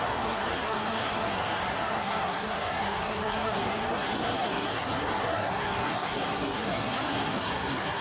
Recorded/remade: remade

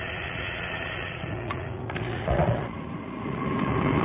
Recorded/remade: remade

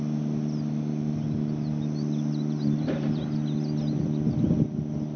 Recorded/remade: recorded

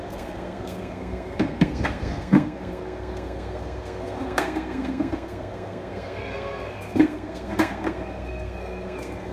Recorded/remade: remade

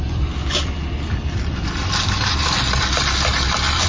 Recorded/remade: recorded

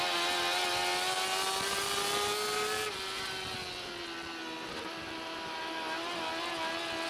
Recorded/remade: recorded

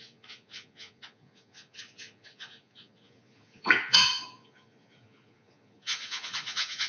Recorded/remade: remade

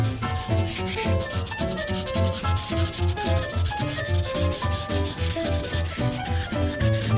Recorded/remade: recorded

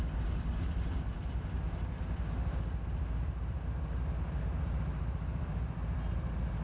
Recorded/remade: recorded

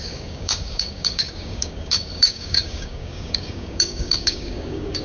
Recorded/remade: remade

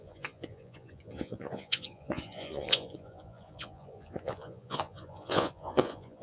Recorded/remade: remade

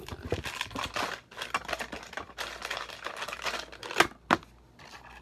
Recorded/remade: recorded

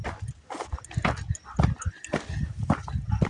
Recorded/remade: recorded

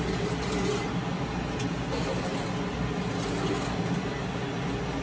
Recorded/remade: recorded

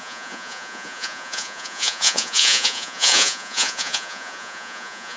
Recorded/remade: remade